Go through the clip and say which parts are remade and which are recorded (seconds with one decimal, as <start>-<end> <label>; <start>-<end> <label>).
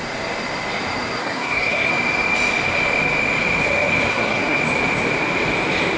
0.0-1.2 recorded; 1.2-1.9 remade; 1.9-4.1 recorded; 4.1-4.6 remade; 4.6-6.0 recorded